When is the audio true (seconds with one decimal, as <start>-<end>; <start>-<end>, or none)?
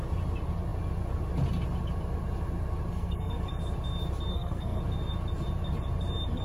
0.0-2.9; 3.5-4.3; 4.8-6.4